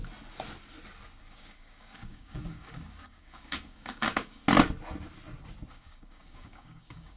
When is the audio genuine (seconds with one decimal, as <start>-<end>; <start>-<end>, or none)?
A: 0.0-1.2; 4.4-5.7